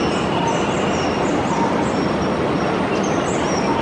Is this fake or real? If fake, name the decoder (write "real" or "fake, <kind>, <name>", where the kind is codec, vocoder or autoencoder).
real